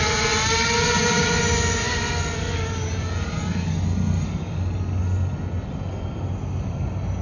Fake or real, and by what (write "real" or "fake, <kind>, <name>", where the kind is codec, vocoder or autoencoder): real